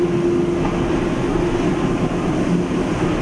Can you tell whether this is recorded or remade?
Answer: recorded